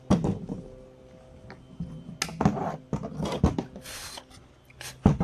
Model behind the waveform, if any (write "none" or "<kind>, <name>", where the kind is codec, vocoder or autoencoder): none